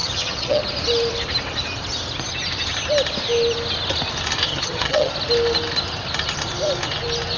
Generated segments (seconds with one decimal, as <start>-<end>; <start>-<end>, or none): 0.0-0.6; 4.5-5.1